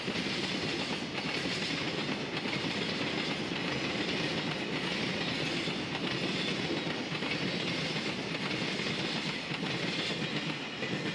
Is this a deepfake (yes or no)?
no